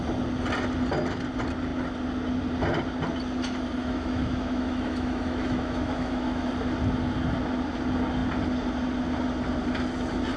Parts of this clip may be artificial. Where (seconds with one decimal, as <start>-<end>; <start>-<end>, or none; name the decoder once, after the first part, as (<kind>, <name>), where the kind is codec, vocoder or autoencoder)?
3.8-6.5 (autoencoder, DAC-VAE)